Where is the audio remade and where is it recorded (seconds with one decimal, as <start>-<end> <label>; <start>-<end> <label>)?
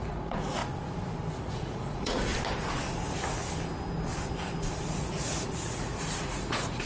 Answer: 0.0-0.6 remade; 0.6-1.3 recorded; 1.3-2.3 remade; 2.3-4.8 recorded; 4.8-6.9 remade